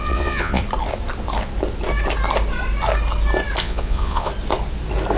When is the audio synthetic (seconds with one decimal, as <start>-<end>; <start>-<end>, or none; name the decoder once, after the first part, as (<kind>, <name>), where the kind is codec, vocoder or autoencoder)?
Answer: 0.0-0.6 (vocoder, Vocos); 3.6-4.3